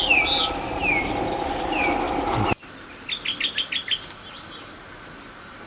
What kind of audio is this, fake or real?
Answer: real